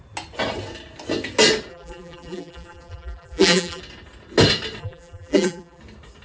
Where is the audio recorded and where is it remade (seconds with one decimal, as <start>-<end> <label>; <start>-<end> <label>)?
0.0-1.7 recorded; 1.7-3.8 remade; 3.8-4.8 recorded; 4.8-5.8 remade; 5.8-6.2 recorded